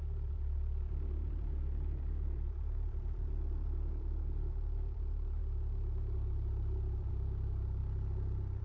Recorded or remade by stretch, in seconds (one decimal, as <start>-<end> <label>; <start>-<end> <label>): 0.0-7.8 remade; 7.8-8.6 recorded